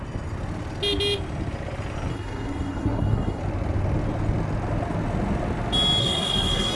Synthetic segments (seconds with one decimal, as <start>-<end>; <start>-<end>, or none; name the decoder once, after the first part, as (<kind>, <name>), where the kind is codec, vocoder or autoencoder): 2.1-3.4 (codec, SNAC); 6.0-6.7